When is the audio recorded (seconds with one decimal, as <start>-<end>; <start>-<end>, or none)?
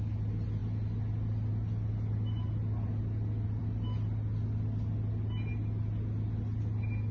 0.0-7.1